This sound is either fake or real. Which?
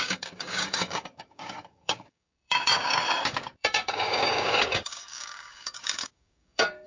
fake